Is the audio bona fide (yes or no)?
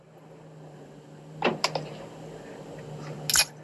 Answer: yes